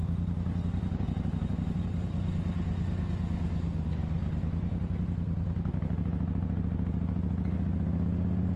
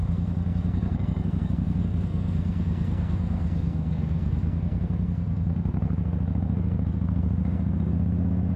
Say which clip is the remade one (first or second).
second